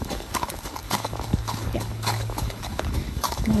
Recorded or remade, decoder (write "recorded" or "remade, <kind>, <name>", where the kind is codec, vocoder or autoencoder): remade, codec, DAC